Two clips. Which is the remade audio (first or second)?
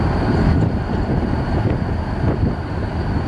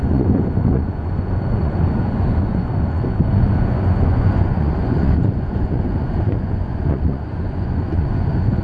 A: second